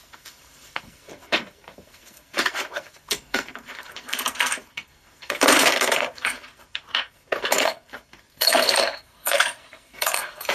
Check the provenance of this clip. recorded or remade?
remade